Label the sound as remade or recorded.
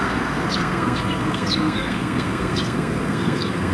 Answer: remade